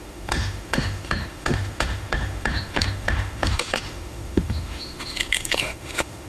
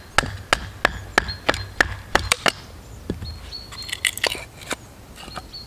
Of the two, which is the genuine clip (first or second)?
second